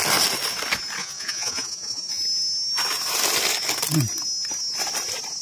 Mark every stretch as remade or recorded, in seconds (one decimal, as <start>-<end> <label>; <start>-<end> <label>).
0.0-1.0 recorded; 1.0-2.2 remade; 2.2-5.4 recorded